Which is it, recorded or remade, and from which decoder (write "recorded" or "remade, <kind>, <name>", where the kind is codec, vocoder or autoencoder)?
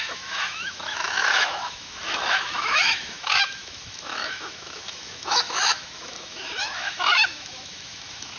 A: remade, autoencoder, DAC-VAE